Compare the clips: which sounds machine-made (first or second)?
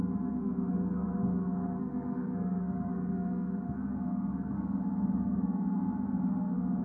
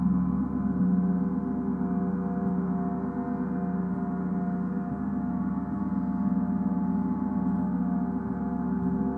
first